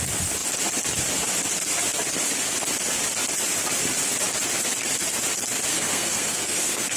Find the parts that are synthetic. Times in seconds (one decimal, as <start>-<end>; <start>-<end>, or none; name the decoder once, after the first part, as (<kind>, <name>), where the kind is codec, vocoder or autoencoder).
5.7-7.0 (codec, SNAC)